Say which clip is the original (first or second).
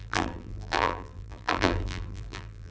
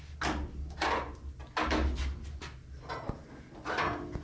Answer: second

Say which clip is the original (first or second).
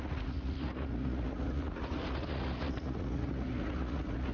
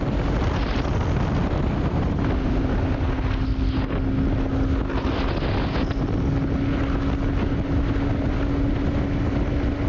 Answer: second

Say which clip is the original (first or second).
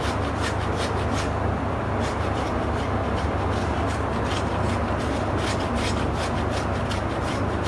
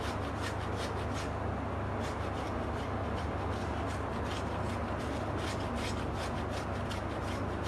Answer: second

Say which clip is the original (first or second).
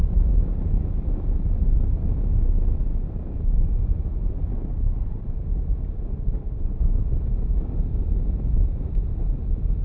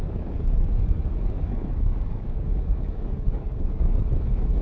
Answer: first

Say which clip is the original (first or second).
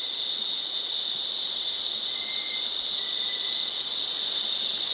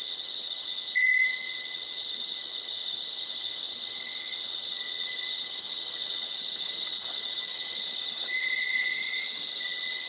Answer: first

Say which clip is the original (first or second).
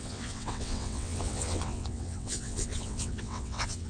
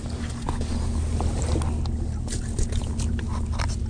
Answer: second